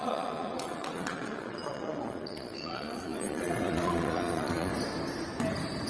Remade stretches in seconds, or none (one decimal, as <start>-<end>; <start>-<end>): 0.0-4.7